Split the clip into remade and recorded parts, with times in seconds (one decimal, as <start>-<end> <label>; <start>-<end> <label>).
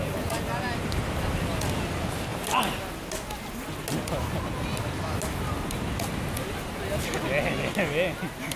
0.0-8.6 recorded